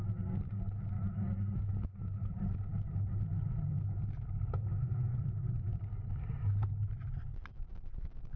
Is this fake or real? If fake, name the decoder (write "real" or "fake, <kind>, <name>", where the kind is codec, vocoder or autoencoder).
real